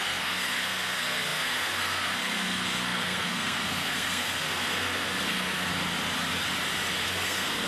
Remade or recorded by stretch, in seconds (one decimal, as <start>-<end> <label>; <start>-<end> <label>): 0.0-5.7 remade; 5.7-7.0 recorded; 7.0-7.7 remade